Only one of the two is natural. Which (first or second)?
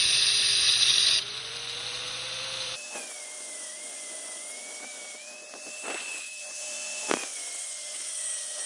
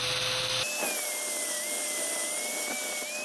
second